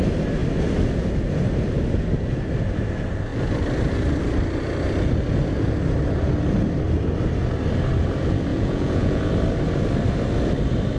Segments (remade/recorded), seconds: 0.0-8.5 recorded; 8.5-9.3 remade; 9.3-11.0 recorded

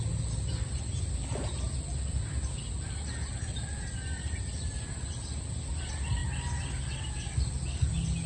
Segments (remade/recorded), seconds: 0.0-8.3 recorded

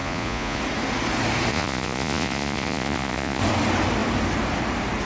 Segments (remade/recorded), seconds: 0.0-0.6 remade; 0.6-1.5 recorded; 1.5-3.4 remade; 3.4-5.0 recorded

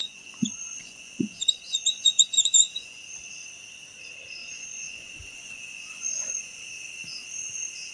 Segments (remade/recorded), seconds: 0.0-3.0 remade; 3.0-4.4 recorded; 4.4-6.6 remade; 6.6-7.9 recorded

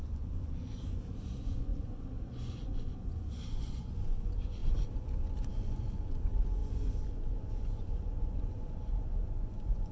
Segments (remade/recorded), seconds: 0.0-9.9 remade